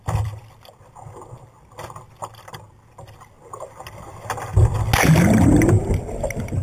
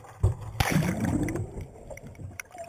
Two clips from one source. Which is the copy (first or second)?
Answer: second